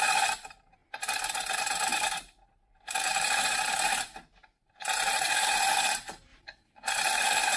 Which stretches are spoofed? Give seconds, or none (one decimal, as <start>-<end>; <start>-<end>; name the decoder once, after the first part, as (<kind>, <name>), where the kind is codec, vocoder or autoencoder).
0.0-0.8 (vocoder, BigVGAN v2); 1.5-7.6